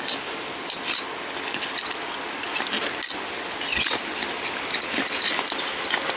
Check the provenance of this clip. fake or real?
real